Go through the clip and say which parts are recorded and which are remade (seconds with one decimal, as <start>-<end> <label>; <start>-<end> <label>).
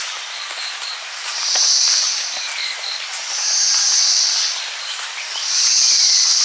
0.0-0.6 recorded; 0.6-3.7 remade; 3.7-6.4 recorded